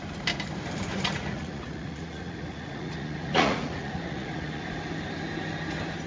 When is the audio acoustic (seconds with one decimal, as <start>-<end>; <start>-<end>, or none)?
0.0-0.9; 4.6-6.1